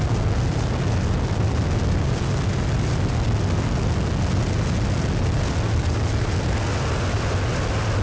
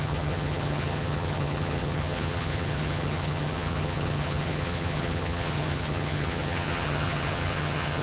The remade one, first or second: second